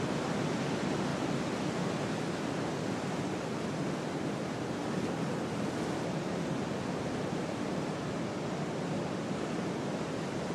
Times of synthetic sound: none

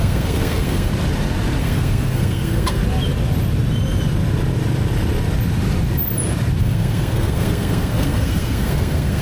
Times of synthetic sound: 0.0-0.9; 1.6-2.8; 6.6-9.2

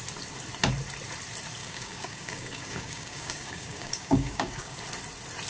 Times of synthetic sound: 1.6-4.8

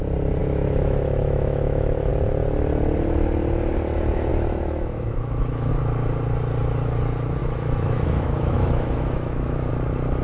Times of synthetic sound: 0.4-2.1; 4.3-5.7; 7.4-9.7